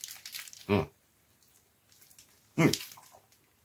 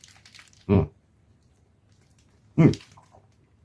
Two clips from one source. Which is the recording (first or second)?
first